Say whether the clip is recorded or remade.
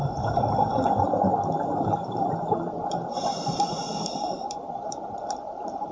remade